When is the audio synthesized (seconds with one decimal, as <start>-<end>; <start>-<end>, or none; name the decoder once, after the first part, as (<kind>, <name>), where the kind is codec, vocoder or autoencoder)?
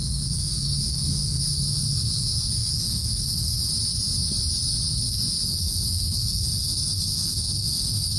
0.0-3.6 (codec, SNAC); 4.9-8.2